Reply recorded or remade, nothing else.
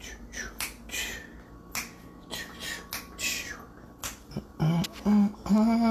recorded